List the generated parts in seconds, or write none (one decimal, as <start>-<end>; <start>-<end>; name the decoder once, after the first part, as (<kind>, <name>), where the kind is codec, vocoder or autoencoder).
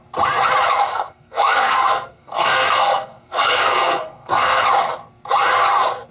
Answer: 0.9-4.6 (codec, SNAC)